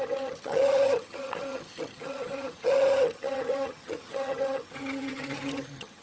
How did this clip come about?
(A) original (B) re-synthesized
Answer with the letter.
B